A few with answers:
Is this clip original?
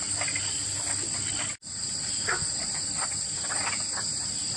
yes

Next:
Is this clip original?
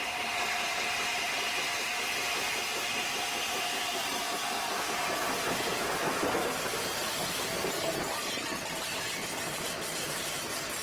yes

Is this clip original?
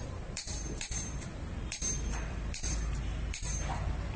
no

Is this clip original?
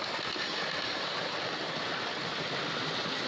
yes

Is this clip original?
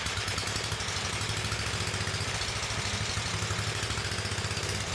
yes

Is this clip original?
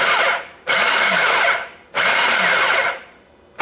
no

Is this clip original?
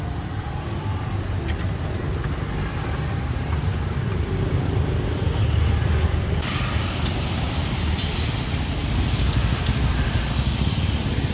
yes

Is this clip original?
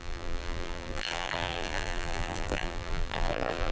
no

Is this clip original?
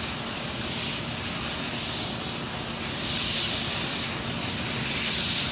yes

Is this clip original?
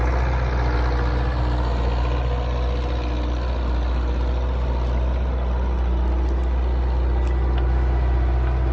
yes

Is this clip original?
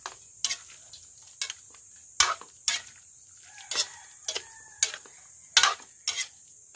yes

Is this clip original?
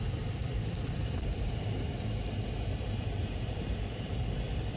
no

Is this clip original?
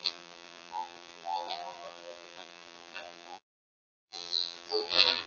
no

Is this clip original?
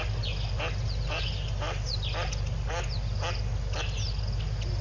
yes